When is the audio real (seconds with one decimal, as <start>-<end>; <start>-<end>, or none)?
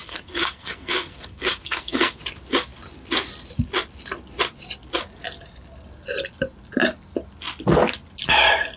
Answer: 2.2-8.8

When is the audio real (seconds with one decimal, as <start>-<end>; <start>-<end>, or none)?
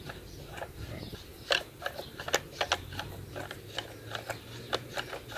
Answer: 0.0-5.4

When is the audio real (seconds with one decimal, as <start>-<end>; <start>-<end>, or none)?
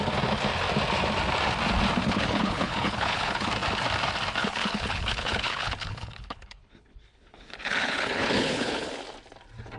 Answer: 0.0-2.0; 3.5-4.4; 8.9-9.8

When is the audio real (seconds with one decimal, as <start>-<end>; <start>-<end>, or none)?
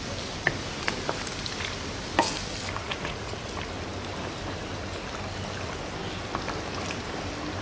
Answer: 0.0-2.8; 3.5-7.6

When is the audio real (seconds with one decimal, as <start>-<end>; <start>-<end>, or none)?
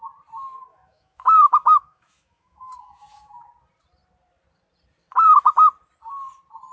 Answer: 0.0-0.7; 3.5-6.7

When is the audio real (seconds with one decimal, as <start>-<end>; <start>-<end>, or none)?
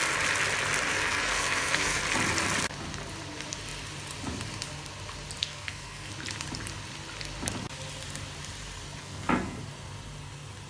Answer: 0.0-0.9; 2.0-5.4; 6.1-9.0; 9.6-10.7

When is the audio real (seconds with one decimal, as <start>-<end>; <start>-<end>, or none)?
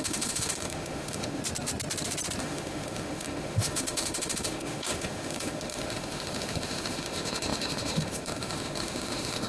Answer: 1.4-2.4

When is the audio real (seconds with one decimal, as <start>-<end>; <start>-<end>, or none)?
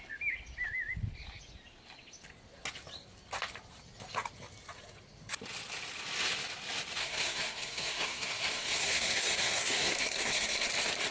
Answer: 0.0-7.0; 10.7-11.1